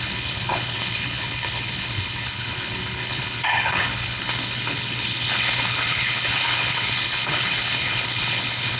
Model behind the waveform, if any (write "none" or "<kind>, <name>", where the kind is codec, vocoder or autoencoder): codec, HILCodec